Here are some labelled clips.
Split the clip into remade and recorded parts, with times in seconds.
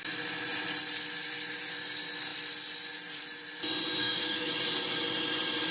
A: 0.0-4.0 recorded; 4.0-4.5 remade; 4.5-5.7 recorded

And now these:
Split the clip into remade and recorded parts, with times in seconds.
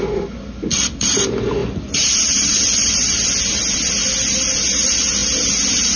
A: 0.0-0.7 recorded; 0.7-1.2 remade; 1.2-1.6 recorded; 1.6-2.5 remade; 2.5-6.0 recorded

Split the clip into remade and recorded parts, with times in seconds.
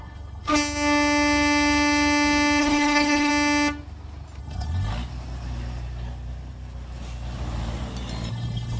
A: 0.0-0.5 remade; 0.5-2.6 recorded; 2.6-3.3 remade; 3.3-4.4 recorded; 4.4-4.9 remade; 4.9-8.3 recorded; 8.3-8.8 remade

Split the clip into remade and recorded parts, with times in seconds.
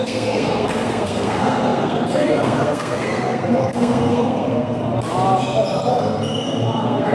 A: 0.0-4.8 remade; 4.8-5.9 recorded; 5.9-7.1 remade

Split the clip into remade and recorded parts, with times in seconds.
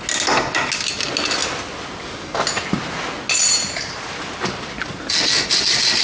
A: 0.0-6.0 recorded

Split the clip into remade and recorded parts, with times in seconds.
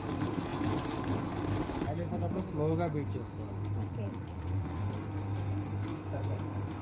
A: 0.0-3.8 recorded; 3.8-4.8 remade; 4.8-6.8 recorded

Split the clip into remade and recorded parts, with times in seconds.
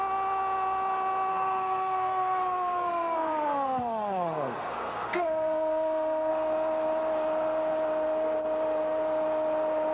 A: 0.0-1.3 recorded; 1.3-6.3 remade; 6.3-9.9 recorded